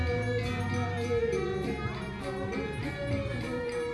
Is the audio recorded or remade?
recorded